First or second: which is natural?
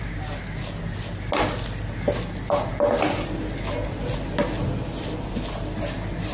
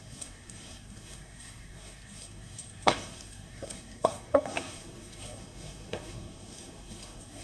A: first